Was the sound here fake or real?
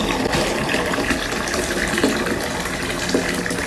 real